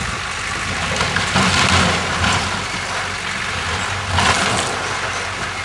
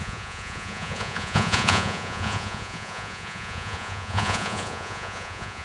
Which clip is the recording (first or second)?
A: first